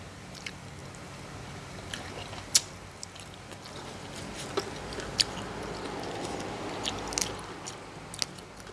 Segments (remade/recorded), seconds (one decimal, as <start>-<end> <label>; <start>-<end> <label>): 0.0-8.7 recorded